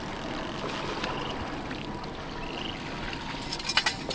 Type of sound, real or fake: real